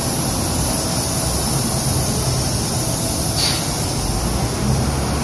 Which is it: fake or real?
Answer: real